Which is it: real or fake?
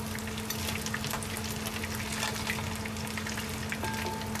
real